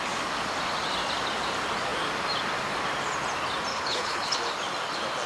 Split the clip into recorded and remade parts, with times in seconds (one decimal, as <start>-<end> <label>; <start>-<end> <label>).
0.0-3.7 recorded; 3.7-4.3 remade; 4.3-5.3 recorded